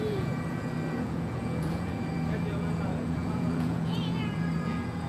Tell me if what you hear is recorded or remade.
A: remade